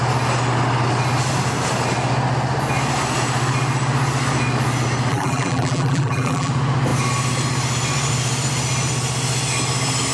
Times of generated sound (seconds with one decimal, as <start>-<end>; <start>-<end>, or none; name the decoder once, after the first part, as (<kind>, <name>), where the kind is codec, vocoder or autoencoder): 5.1-6.5 (vocoder, BigVGAN v2)